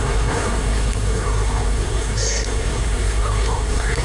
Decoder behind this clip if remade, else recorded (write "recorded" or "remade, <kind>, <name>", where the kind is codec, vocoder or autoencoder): remade, codec, SNAC